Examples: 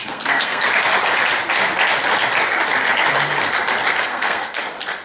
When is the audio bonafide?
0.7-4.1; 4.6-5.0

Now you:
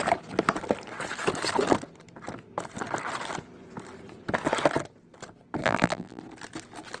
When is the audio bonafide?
0.0-5.6; 6.2-7.0

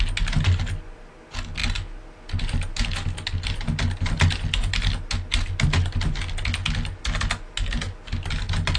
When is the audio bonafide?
0.0-8.8

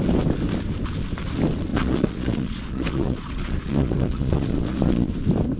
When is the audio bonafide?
0.0-1.7; 5.1-5.6

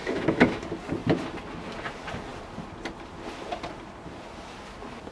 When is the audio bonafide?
0.6-5.1

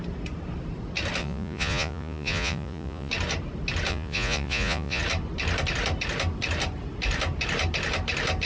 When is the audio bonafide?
0.0-1.2; 3.1-3.9; 5.0-8.5

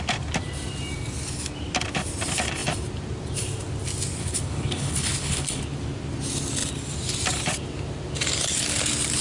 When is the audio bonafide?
0.0-4.2; 5.6-9.2

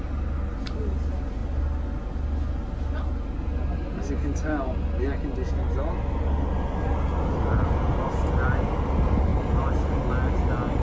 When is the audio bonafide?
0.0-9.3; 10.1-10.8